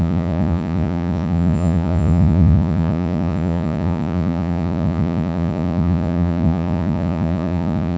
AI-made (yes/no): yes